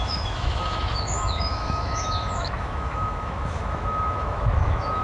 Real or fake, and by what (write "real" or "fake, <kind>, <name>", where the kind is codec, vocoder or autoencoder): fake, autoencoder, DAC-VAE